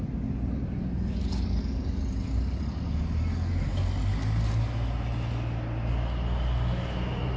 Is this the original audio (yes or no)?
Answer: yes